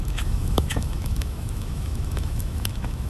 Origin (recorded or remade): remade